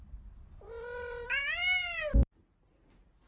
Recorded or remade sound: recorded